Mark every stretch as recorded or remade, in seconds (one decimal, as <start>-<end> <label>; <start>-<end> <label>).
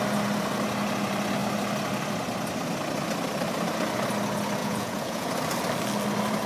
0.0-4.6 recorded; 4.6-5.3 remade; 5.3-6.5 recorded